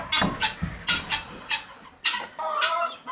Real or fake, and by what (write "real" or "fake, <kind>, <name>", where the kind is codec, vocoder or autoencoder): real